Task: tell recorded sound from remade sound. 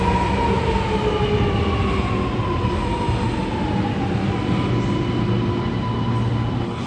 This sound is recorded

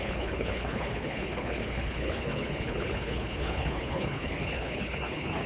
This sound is remade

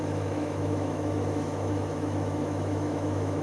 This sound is remade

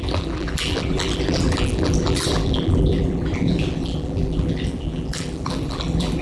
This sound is remade